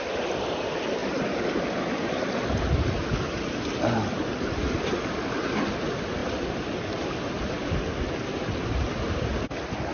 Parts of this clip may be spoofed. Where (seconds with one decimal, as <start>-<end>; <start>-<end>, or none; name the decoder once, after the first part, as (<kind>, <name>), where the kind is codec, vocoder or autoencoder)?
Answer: none